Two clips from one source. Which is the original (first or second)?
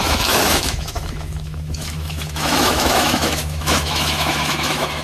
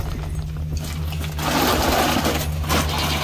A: second